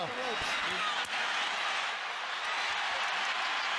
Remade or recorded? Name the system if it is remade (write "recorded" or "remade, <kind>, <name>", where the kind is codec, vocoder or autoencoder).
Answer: recorded